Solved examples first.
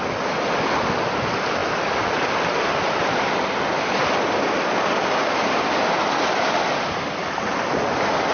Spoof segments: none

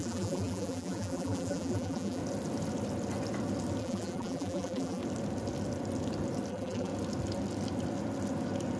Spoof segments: 0.0-2.2; 3.8-5.0; 6.5-6.9

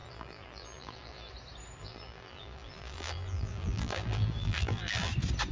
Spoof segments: 0.0-1.3; 1.8-5.1

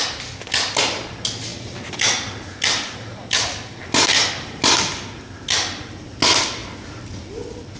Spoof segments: none